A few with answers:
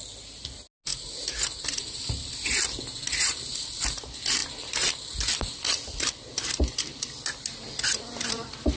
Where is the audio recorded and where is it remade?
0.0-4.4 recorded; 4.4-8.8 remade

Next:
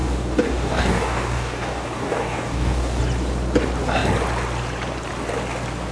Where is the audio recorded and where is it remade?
0.0-3.0 remade; 3.0-5.9 recorded

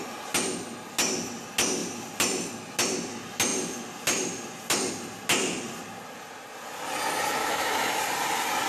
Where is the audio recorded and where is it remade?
0.0-7.4 recorded; 7.4-8.0 remade; 8.0-8.7 recorded

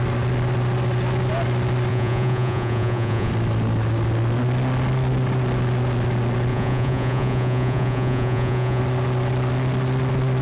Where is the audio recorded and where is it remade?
0.0-1.9 recorded; 1.9-3.3 remade; 3.3-6.5 recorded; 6.5-8.8 remade; 8.8-10.4 recorded